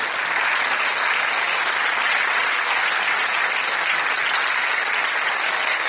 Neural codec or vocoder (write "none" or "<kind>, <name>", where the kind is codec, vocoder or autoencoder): none